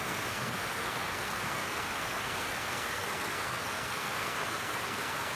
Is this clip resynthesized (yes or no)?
yes